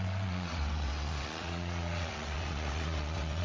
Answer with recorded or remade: remade